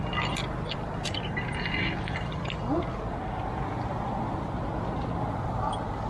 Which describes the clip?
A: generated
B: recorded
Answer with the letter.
B